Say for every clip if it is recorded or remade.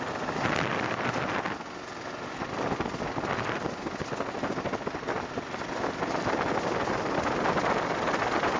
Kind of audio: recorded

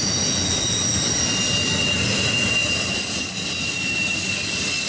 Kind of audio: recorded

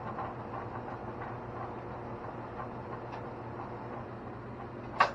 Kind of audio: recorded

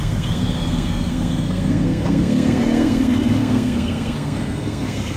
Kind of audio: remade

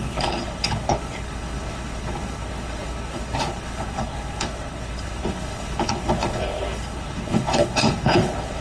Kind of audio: remade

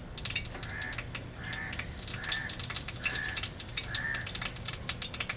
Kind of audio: recorded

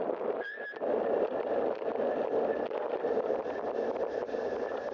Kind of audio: recorded